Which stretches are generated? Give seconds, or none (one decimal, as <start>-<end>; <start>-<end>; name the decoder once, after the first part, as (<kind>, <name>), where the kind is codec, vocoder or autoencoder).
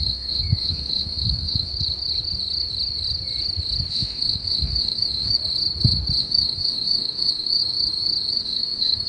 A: 0.0-1.7 (autoencoder, DAC-VAE); 3.9-5.4; 6.2-7.6; 8.3-9.1